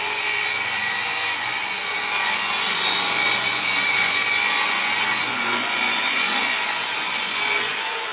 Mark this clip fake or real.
fake